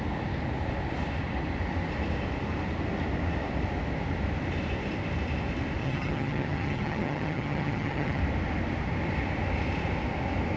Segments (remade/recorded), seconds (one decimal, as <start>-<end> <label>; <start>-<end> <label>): 0.0-5.8 recorded; 5.8-8.2 remade; 8.2-10.6 recorded